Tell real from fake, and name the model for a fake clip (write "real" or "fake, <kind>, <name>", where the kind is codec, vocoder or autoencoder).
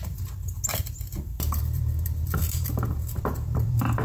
fake, vocoder, BigVGAN v2